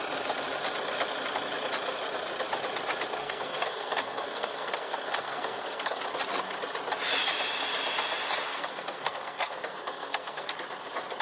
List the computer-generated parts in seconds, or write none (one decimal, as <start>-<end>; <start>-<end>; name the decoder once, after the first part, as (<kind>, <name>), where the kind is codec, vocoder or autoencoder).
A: 3.2-6.0 (codec, SNAC); 8.5-10.5